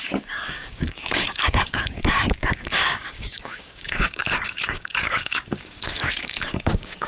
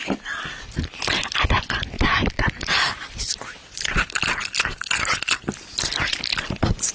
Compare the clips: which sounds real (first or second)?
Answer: second